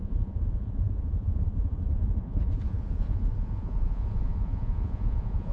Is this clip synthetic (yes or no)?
yes